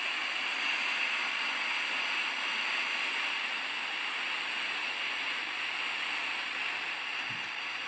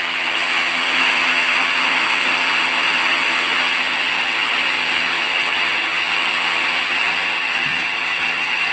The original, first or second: first